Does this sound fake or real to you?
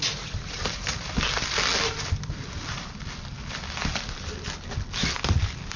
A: real